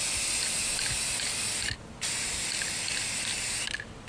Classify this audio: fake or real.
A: real